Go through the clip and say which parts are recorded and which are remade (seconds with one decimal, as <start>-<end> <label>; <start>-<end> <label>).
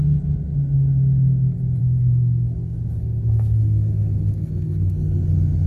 0.0-1.8 recorded; 1.8-5.2 remade; 5.2-5.7 recorded